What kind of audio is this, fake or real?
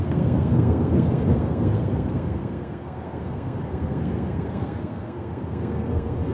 fake